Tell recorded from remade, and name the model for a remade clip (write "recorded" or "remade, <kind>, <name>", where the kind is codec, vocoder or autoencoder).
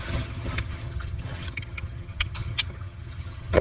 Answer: remade, vocoder, HiFi-GAN